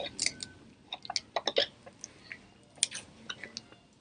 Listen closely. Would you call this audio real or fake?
real